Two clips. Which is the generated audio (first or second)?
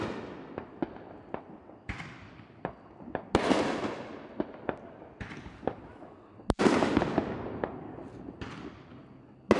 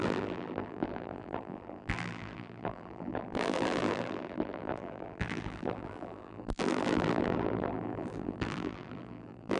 second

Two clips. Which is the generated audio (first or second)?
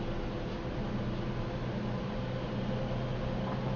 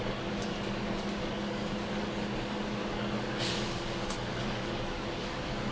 second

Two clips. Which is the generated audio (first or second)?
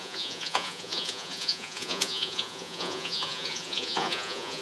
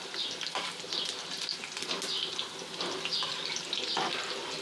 first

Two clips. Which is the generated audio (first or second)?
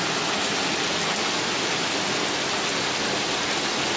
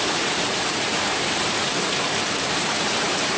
second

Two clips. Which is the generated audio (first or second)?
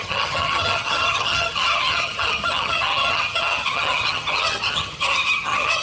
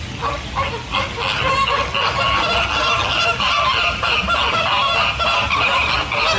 first